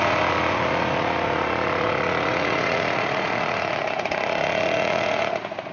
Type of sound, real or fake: fake